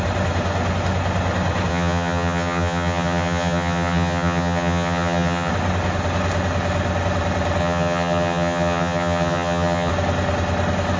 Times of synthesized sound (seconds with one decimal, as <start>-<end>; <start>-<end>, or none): 1.7-5.5; 7.6-9.9